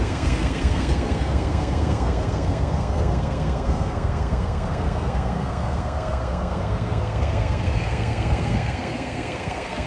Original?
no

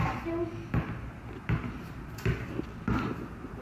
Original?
yes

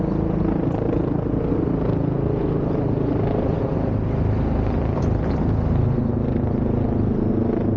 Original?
yes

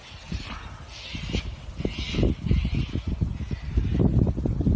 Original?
yes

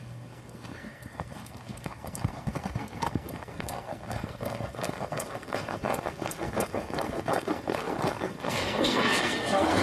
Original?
no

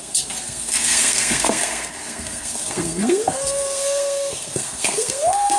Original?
no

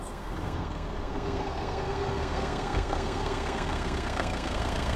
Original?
no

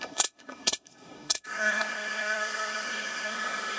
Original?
no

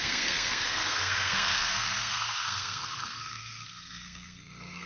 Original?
no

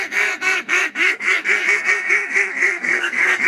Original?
no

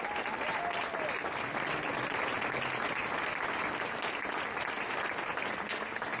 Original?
yes